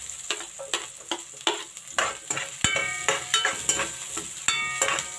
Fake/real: real